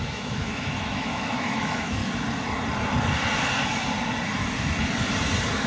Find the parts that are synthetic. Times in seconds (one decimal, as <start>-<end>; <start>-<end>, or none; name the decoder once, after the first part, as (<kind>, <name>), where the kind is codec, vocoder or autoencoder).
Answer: 0.0-2.0 (autoencoder, DAC-VAE)